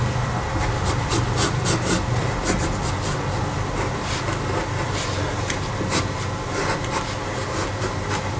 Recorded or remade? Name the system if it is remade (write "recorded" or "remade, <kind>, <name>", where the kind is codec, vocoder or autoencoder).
recorded